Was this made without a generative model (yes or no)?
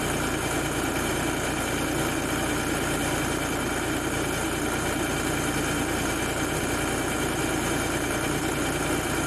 yes